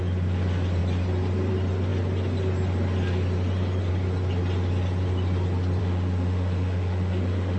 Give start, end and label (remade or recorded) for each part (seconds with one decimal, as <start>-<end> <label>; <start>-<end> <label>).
0.0-5.8 recorded; 5.8-7.6 remade